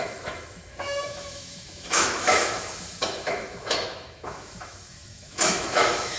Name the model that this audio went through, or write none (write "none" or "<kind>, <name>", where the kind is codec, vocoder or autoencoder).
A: autoencoder, DAC-VAE